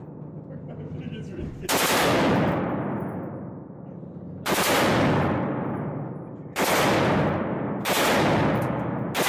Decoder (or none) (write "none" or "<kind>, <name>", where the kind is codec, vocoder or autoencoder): none